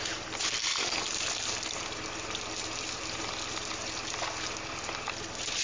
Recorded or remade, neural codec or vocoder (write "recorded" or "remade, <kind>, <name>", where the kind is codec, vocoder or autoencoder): recorded